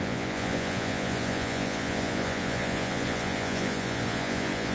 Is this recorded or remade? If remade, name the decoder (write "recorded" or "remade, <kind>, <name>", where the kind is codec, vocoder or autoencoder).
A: remade, vocoder, Vocos